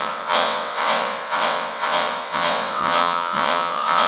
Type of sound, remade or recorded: remade